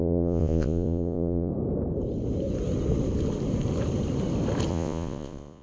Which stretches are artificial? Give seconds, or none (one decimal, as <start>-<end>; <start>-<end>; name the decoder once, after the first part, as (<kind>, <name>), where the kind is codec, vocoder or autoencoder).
0.0-1.5 (vocoder, Vocos); 4.7-5.6